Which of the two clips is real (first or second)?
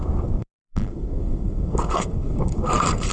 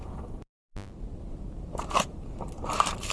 second